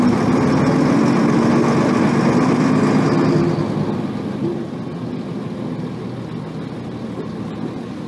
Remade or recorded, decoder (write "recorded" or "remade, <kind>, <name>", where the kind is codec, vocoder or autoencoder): recorded